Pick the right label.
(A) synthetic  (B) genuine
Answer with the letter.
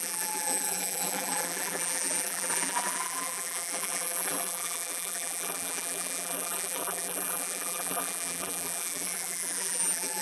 A